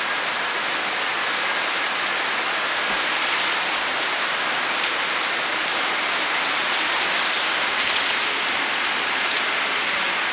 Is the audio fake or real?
real